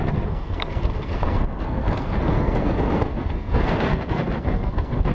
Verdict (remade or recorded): remade